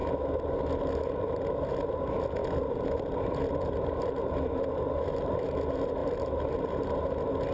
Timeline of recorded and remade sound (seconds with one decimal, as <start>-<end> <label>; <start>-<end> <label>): 0.0-2.4 recorded; 2.4-5.4 remade; 5.4-6.0 recorded; 6.0-7.0 remade; 7.0-7.5 recorded